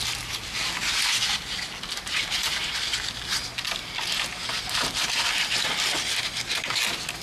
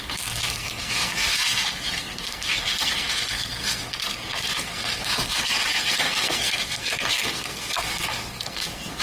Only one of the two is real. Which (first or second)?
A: first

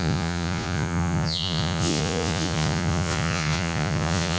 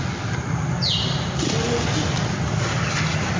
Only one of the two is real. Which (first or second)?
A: second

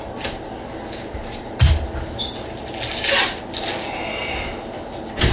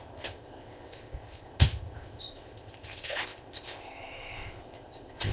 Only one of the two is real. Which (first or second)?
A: first